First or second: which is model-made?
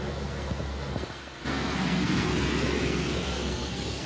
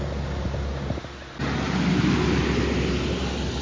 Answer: first